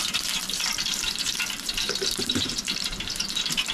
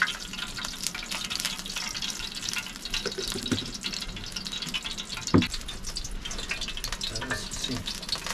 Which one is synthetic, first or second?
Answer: first